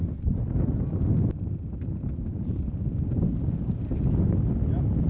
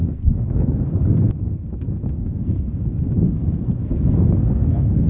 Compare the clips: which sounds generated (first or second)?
second